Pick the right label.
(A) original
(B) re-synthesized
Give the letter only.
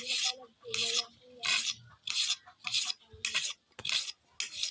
A